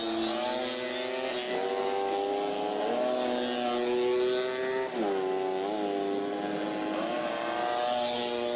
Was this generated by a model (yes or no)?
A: no